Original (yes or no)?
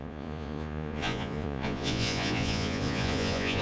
no